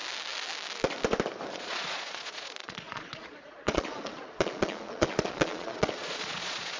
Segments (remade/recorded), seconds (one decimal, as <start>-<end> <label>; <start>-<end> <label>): 0.0-1.5 recorded; 1.5-6.8 remade